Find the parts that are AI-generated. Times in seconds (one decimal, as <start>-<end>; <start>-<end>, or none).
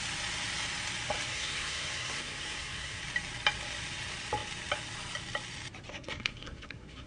1.3-3.0; 5.9-7.1